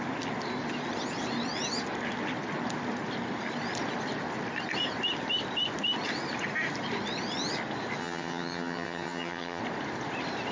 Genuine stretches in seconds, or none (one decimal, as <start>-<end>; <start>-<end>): 0.0-8.0; 9.6-10.5